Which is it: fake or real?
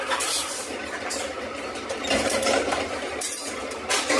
fake